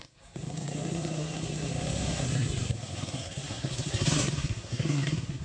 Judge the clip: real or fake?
fake